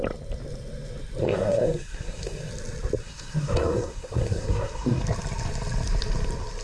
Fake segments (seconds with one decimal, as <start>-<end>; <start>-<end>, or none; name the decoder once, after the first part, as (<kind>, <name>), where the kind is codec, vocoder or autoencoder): 1.2-2.5 (codec, SNAC); 3.0-5.0

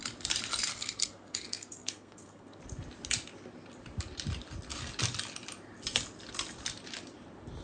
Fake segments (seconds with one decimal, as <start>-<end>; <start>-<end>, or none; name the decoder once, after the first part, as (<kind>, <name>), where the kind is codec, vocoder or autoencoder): 0.7-2.6 (codec, SNAC)

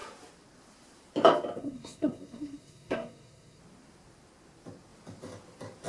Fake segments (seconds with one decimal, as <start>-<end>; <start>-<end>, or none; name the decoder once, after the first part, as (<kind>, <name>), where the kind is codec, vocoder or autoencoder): 1.6-3.6 (codec, SNAC)

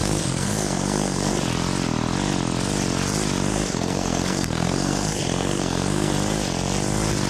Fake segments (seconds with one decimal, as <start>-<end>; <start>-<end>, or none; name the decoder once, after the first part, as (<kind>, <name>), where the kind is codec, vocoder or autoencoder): 0.0-1.3 (codec, SNAC); 3.5-6.1

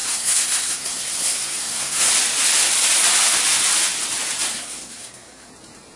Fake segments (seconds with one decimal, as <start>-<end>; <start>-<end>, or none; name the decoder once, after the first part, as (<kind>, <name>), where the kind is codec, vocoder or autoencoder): 0.0-2.1 (codec, SNAC); 4.5-5.5